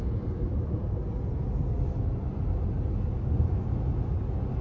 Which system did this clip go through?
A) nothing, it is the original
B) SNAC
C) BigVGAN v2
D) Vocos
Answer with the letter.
A